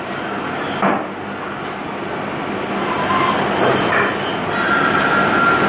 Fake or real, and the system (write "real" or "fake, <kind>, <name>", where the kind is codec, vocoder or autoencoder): real